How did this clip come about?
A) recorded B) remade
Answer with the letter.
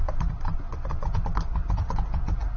A